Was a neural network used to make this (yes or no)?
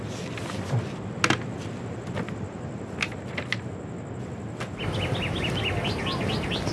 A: no